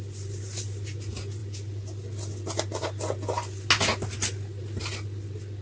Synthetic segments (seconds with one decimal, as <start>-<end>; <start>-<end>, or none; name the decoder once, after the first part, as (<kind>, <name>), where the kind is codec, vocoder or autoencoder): none